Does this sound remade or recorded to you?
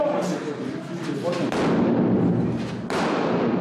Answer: recorded